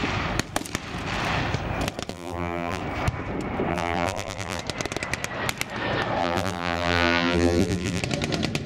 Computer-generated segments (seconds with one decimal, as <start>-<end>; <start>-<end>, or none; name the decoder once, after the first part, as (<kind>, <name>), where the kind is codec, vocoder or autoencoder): 2.1-2.8 (vocoder, BigVGAN v2); 3.7-4.6; 6.2-8.0